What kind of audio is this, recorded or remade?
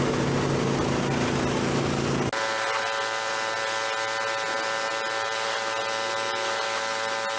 recorded